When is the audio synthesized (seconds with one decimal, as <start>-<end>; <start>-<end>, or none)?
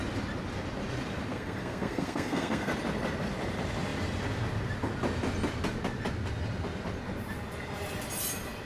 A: 1.3-2.7